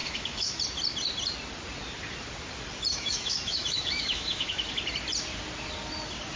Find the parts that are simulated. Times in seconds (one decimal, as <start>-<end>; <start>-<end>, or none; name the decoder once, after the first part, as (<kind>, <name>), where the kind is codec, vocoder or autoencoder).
0.0-0.6 (autoencoder, DAC-VAE); 2.9-4.7